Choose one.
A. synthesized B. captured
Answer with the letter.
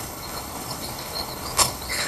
A